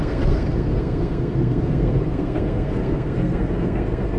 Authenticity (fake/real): fake